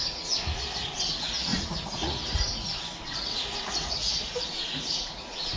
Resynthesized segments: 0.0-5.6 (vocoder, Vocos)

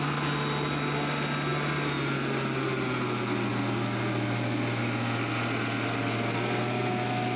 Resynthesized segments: none

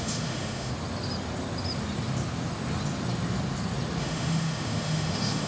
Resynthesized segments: 0.0-0.7 (autoencoder, DAC-VAE); 4.0-5.5

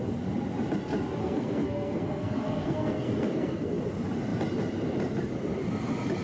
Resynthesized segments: 1.2-3.8 (codec, SNAC)